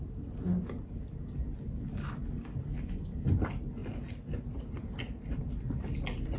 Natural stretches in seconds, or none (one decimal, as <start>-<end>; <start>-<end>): 0.0-6.4